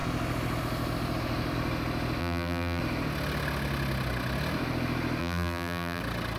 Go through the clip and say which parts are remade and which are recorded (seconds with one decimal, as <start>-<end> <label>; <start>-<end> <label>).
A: 0.0-2.2 recorded; 2.2-2.8 remade; 2.8-5.2 recorded; 5.2-6.0 remade; 6.0-6.4 recorded

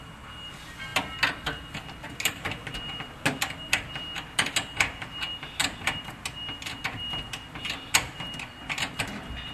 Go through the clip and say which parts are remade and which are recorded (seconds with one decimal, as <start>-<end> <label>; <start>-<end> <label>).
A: 0.0-9.5 recorded

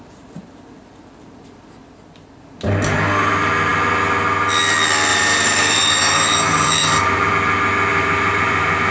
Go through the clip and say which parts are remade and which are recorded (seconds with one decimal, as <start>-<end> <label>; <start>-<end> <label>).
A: 0.0-5.1 recorded; 5.1-7.3 remade; 7.3-7.9 recorded; 7.9-8.9 remade

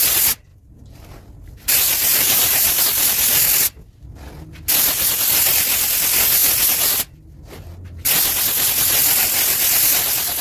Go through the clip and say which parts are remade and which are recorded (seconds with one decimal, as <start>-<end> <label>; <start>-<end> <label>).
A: 0.0-0.5 recorded; 0.5-2.8 remade; 2.8-10.4 recorded

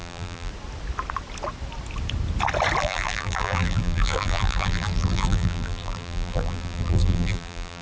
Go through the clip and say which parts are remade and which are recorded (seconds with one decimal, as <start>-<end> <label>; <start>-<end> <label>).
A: 0.0-0.5 remade; 0.5-2.8 recorded; 2.8-7.8 remade